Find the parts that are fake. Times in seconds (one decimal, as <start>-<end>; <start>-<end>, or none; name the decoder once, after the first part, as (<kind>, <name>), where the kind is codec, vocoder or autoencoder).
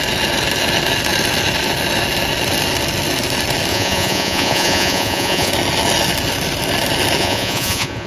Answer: 3.7-5.5 (vocoder, Vocos); 7.2-8.1